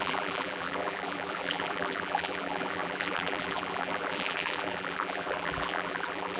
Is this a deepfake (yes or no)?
yes